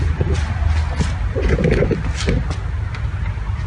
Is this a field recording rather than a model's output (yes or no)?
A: yes